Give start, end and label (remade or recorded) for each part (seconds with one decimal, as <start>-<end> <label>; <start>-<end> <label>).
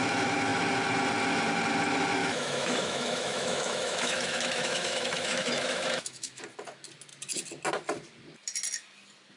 0.0-2.2 recorded; 2.2-6.4 remade; 6.4-9.4 recorded